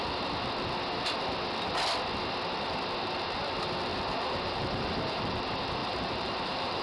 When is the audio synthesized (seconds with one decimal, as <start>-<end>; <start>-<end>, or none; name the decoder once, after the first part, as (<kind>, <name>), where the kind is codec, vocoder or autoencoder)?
3.9-5.2 (vocoder, BigVGAN v2); 5.8-6.8